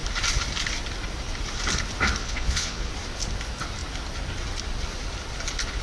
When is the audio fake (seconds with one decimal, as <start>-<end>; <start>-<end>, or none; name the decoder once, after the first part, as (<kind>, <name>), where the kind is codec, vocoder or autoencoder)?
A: 2.2-2.9 (vocoder, Vocos)